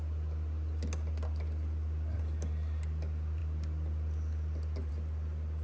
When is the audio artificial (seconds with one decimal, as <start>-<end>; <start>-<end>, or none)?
none